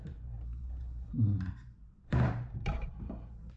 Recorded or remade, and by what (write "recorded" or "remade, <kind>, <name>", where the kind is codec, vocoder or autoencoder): remade, vocoder, BigVGAN v2